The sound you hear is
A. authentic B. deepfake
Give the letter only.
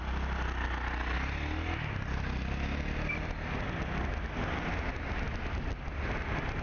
A